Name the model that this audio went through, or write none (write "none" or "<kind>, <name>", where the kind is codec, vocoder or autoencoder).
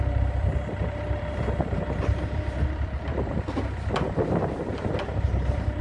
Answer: vocoder, BigVGAN v2